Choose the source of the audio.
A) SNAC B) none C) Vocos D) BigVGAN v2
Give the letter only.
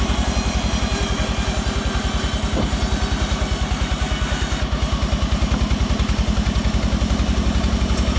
B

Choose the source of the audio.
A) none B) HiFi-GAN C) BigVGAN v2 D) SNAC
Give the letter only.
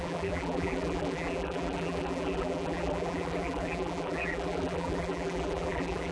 C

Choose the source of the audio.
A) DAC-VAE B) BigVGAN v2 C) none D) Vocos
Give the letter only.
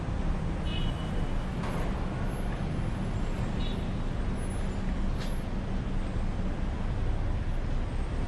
C